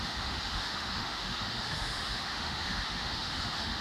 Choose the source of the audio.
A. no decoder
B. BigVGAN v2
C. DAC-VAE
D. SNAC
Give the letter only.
C